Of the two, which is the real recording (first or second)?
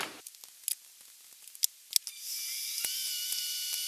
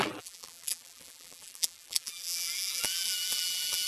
first